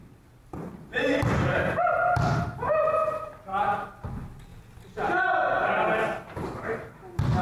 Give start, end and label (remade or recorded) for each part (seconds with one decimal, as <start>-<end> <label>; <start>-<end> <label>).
0.0-2.4 remade; 2.4-6.0 recorded; 6.0-7.0 remade; 7.0-7.4 recorded